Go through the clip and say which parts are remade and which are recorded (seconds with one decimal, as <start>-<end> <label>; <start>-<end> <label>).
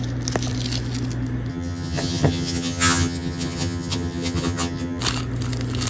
0.0-1.5 recorded; 1.5-5.0 remade; 5.0-5.9 recorded